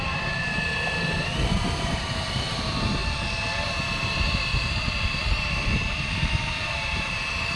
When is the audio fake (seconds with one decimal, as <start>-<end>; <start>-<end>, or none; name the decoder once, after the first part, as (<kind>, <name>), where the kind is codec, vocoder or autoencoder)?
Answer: 0.0-7.6 (vocoder, BigVGAN v2)